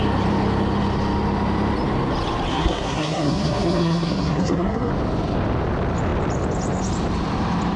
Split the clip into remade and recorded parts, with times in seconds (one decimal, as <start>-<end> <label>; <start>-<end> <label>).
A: 0.0-2.5 recorded; 2.5-4.9 remade; 4.9-7.8 recorded